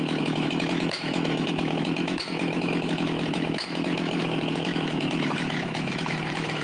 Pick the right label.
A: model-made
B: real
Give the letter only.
A